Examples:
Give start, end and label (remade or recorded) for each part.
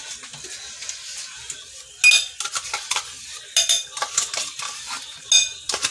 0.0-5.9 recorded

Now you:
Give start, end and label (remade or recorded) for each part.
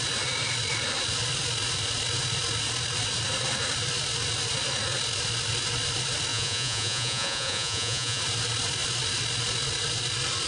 0.0-6.3 recorded; 6.3-8.2 remade; 8.2-10.5 recorded